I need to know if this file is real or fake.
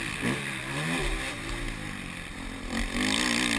real